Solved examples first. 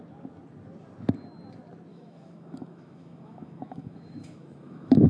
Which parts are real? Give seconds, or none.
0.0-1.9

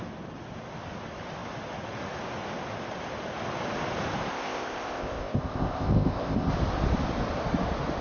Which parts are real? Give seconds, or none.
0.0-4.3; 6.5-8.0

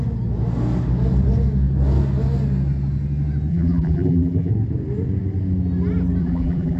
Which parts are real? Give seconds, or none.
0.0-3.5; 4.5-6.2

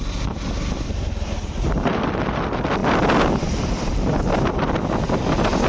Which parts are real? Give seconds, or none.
0.0-5.7